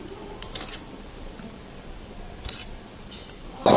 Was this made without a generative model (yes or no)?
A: no